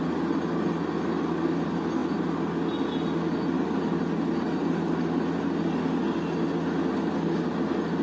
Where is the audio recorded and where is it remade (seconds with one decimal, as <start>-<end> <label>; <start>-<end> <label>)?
0.0-8.0 recorded